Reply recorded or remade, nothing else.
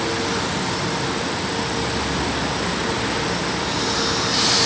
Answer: recorded